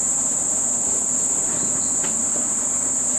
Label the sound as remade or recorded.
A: remade